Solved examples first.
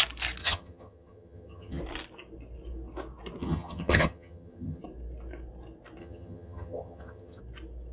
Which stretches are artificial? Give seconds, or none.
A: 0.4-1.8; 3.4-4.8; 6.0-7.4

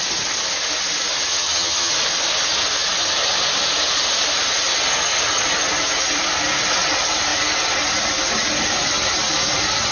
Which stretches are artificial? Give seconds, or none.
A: 1.3-1.9

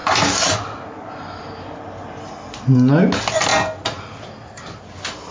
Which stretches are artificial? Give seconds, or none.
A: none

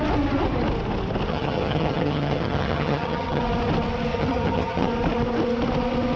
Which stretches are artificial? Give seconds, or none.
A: 1.3-3.4; 4.1-4.9

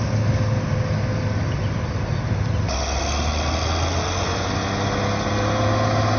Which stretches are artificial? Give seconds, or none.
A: none

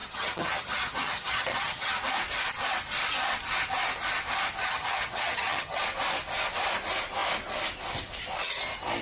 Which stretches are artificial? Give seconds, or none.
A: 0.0-2.0; 4.6-5.8

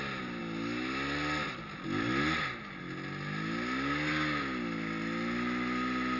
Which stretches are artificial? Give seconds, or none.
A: none

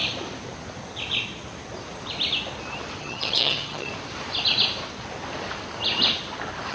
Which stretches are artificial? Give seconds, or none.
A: 3.0-3.9